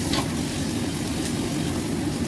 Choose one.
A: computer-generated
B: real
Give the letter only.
B